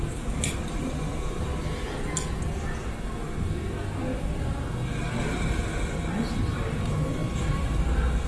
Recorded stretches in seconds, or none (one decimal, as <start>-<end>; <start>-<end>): 1.5-6.4